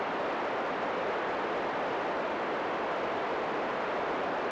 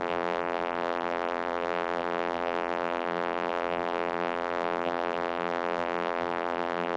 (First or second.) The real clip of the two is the first